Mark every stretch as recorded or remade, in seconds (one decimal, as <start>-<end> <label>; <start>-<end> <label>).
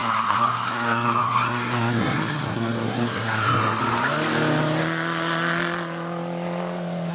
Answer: 0.0-3.8 remade; 3.8-7.1 recorded